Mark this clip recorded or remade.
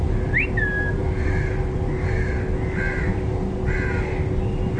recorded